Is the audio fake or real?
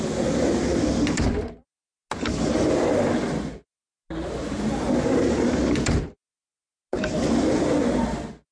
real